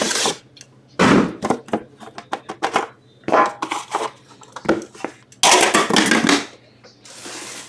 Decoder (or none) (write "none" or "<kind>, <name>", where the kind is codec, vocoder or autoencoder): none